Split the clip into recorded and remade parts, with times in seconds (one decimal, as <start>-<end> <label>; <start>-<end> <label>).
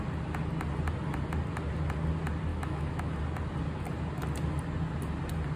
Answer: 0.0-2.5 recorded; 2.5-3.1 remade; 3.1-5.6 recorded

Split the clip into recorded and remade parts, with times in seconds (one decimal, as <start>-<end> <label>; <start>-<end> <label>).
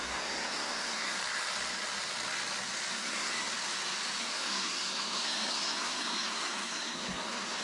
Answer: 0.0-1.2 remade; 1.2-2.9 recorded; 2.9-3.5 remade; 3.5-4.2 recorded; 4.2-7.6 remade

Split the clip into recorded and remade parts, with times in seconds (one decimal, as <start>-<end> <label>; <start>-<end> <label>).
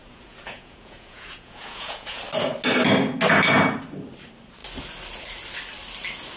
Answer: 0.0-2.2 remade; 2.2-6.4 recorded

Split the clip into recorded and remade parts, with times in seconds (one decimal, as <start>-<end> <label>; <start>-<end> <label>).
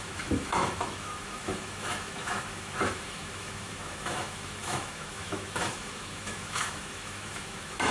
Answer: 0.0-7.9 remade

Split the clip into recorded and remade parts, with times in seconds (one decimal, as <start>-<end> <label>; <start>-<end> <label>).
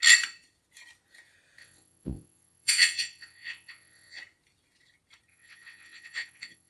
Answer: 0.0-1.6 recorded; 1.6-4.2 remade; 4.2-5.3 recorded; 5.3-6.7 remade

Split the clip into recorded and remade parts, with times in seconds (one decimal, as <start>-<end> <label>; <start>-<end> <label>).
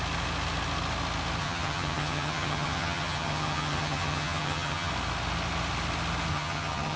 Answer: 0.0-1.4 recorded; 1.4-4.9 remade; 4.9-6.3 recorded; 6.3-7.0 remade